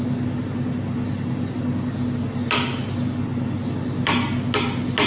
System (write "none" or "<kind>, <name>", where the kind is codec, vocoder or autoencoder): none